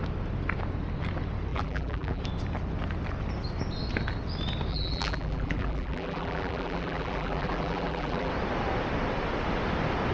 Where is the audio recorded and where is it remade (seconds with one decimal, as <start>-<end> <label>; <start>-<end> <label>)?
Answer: 0.0-1.5 recorded; 1.5-2.2 remade; 2.2-4.7 recorded; 4.7-8.3 remade; 8.3-10.1 recorded